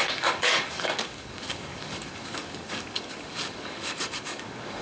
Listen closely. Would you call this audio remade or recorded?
remade